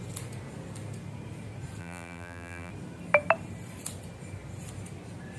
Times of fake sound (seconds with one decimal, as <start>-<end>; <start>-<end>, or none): 1.8-2.7